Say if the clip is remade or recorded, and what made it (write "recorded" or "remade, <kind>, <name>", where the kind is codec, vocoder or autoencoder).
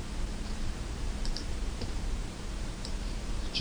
remade, vocoder, BigVGAN v2